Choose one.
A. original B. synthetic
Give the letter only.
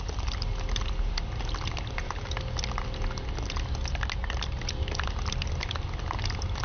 A